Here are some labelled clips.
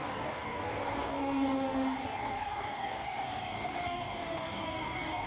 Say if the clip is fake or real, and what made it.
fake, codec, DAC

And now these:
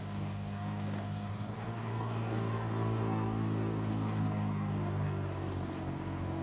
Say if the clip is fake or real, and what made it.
fake, codec, DAC